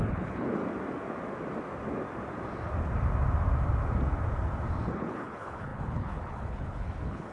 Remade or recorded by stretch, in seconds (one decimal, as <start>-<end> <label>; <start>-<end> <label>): 0.0-0.6 remade; 0.6-4.9 recorded; 4.9-7.3 remade